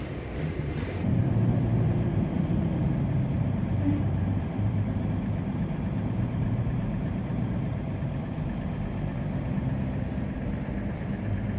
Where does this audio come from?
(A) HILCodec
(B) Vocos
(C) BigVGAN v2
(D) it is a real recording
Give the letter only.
C